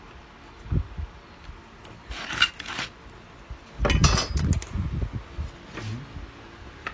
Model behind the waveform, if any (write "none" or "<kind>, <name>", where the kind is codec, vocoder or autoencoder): none